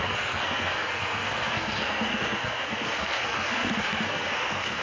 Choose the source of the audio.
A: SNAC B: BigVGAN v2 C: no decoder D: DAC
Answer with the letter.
A